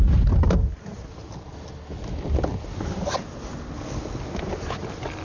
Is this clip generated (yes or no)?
no